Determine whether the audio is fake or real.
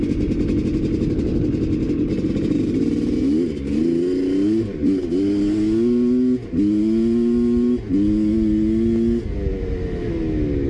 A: real